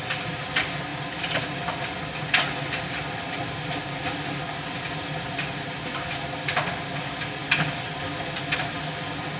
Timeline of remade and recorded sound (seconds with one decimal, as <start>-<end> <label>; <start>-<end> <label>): 0.0-9.4 recorded

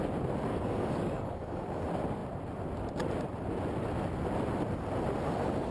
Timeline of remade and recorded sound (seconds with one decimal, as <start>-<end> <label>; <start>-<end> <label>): 0.0-0.5 recorded; 0.5-1.8 remade; 1.8-5.7 recorded

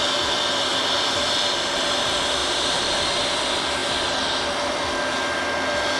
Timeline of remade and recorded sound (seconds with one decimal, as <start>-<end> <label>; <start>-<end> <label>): 0.0-2.4 recorded; 2.4-3.0 remade; 3.0-6.0 recorded

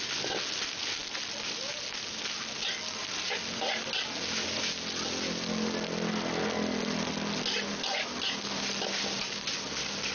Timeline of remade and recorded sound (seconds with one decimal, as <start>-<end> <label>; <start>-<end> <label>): 0.0-10.1 recorded